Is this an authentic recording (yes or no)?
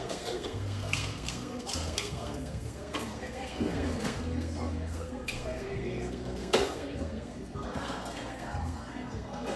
no